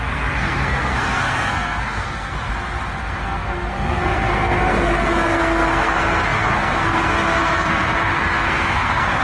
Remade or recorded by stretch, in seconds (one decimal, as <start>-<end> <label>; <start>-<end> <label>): 0.0-2.5 remade; 2.5-3.0 recorded; 3.0-9.2 remade